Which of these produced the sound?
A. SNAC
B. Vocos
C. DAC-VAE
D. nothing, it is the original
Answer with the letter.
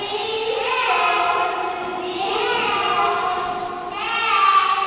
D